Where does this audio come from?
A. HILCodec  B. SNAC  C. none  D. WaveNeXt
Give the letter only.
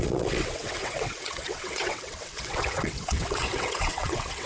D